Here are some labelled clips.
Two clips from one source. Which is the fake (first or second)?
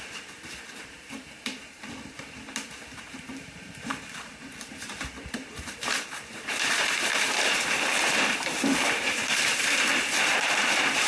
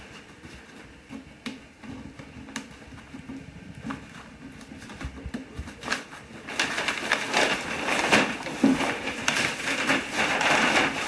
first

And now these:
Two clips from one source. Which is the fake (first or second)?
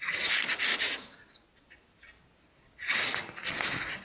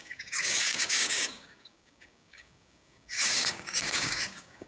second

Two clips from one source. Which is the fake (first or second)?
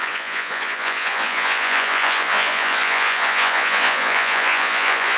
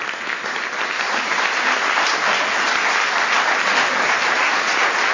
first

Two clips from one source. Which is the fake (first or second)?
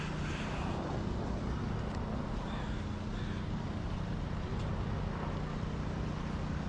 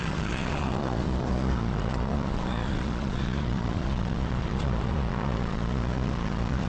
second